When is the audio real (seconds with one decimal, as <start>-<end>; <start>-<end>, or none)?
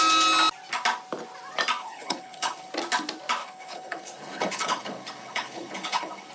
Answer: 0.0-1.8; 2.7-3.4